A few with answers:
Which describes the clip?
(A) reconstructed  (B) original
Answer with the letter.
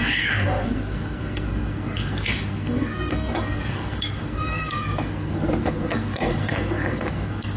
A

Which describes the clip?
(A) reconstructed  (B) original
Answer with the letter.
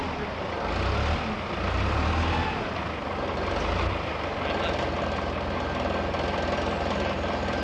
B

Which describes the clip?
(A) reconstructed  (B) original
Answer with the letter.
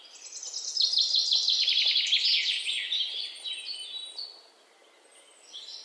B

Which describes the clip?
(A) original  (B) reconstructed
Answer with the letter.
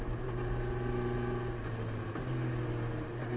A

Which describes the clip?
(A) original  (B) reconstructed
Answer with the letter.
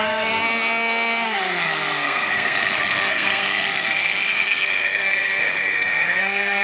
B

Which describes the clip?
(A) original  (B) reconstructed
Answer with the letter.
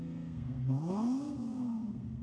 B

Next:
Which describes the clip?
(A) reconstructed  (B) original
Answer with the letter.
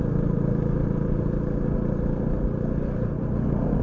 B